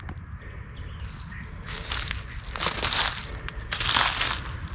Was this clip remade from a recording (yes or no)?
no